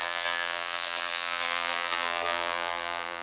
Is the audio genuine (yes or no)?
no